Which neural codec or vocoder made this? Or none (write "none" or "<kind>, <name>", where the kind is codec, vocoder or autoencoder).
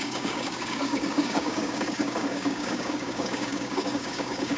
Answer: codec, DAC